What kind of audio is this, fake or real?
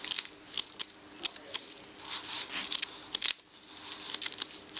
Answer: real